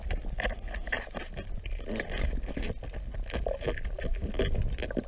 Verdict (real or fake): real